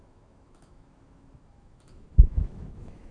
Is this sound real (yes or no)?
no